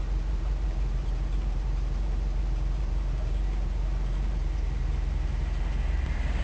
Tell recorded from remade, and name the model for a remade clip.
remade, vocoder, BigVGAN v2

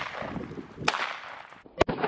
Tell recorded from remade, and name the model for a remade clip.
recorded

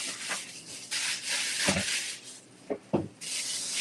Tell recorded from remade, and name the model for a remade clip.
recorded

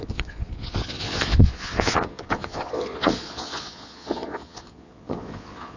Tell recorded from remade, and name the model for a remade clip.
remade, vocoder, Vocos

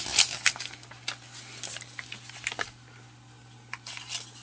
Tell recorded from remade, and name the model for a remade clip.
recorded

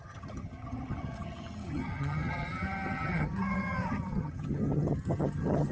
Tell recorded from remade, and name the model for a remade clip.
remade, vocoder, HiFi-GAN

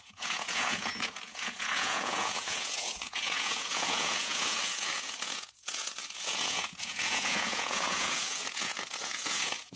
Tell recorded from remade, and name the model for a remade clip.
remade, vocoder, Vocos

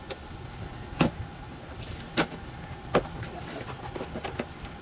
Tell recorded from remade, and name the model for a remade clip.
recorded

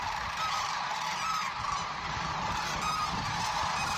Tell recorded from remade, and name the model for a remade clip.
recorded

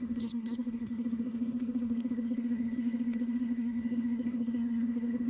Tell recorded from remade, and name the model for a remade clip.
remade, codec, SNAC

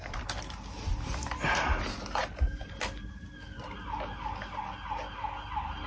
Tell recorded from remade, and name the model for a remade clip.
recorded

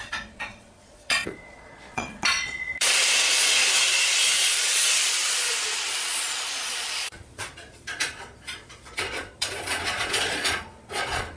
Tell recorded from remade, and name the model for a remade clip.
remade, vocoder, Vocos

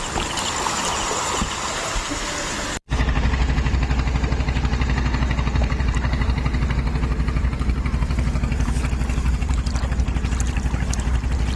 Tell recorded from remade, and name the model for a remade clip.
recorded